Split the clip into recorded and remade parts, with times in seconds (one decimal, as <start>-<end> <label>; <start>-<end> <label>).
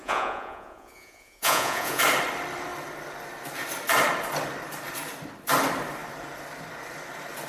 0.0-2.0 remade; 2.0-7.5 recorded